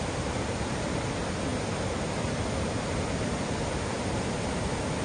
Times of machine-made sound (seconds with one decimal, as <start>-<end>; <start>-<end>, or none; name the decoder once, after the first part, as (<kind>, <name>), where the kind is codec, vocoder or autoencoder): none